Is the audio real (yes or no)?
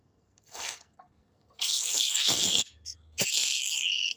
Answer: no